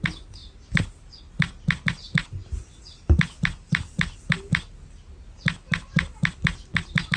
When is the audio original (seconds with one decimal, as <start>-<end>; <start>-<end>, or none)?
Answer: 0.0-7.2